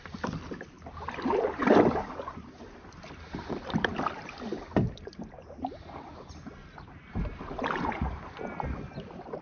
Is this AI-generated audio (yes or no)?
yes